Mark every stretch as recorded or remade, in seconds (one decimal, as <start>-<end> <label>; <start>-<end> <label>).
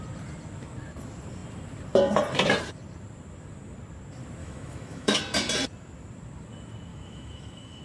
0.0-4.4 recorded; 4.4-5.2 remade; 5.2-6.9 recorded; 6.9-7.8 remade